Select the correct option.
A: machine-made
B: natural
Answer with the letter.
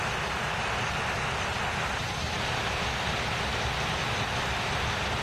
B